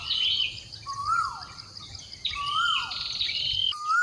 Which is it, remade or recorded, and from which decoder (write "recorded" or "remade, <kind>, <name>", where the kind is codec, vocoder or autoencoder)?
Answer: recorded